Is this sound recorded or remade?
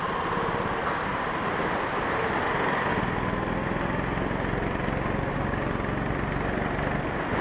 recorded